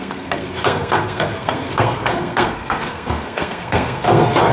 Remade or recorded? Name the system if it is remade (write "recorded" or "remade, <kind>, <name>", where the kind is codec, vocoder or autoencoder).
remade, codec, SNAC